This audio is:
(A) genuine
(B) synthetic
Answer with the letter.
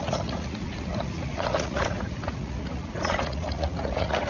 B